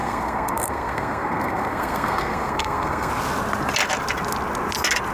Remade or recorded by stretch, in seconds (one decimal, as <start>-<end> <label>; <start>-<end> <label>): 0.0-3.1 remade; 3.1-5.1 recorded